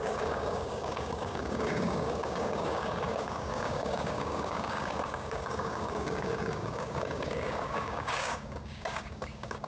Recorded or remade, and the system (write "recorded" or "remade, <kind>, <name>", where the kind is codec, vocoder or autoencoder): remade, codec, DAC